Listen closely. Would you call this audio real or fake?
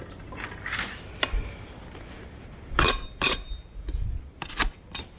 real